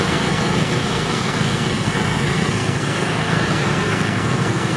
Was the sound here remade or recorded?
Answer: remade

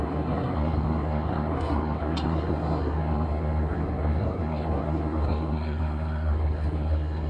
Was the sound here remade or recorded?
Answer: remade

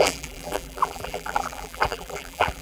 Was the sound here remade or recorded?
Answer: remade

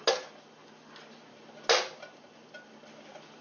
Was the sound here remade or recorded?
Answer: recorded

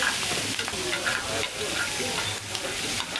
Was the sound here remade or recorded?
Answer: recorded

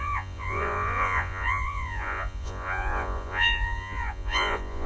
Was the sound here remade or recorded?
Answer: remade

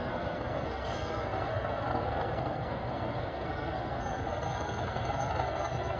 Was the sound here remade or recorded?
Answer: remade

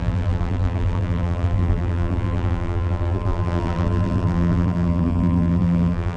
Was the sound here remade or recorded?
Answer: remade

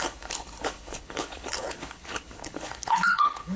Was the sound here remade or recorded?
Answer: remade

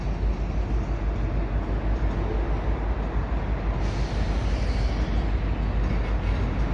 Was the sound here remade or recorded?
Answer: recorded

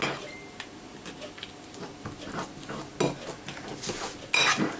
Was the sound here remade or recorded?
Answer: recorded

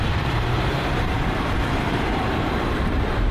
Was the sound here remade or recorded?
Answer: remade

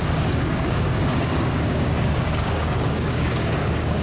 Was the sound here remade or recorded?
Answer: remade